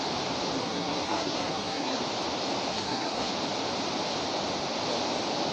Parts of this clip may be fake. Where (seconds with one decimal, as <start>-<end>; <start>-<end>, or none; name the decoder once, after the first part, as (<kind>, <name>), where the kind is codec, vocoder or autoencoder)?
0.6-2.0 (codec, SNAC); 2.7-3.3